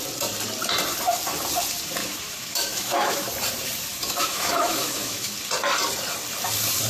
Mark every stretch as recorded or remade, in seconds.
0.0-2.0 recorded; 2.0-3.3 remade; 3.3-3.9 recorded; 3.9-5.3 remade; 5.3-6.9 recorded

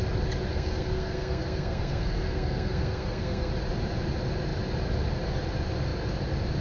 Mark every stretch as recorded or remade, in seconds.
0.0-0.5 recorded; 0.5-3.5 remade; 3.5-6.6 recorded

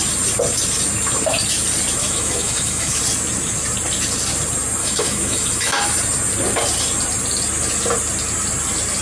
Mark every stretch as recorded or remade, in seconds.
0.0-2.0 recorded; 2.0-3.0 remade; 3.0-4.8 recorded; 4.8-5.8 remade; 5.8-9.0 recorded

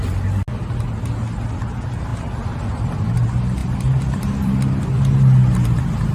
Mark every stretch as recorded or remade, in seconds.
0.0-2.1 recorded; 2.1-3.0 remade; 3.0-3.6 recorded; 3.6-5.0 remade; 5.0-6.1 recorded

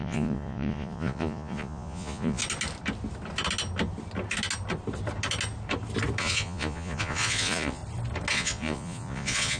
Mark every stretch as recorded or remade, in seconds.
0.0-2.4 remade; 2.4-6.2 recorded; 6.2-7.8 remade; 7.8-8.3 recorded; 8.3-9.6 remade

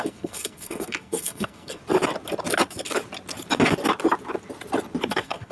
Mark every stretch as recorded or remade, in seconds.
0.0-1.8 remade; 1.8-5.1 recorded; 5.1-5.5 remade

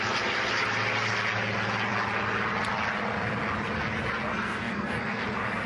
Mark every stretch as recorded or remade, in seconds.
0.0-4.3 recorded; 4.3-5.2 remade; 5.2-5.7 recorded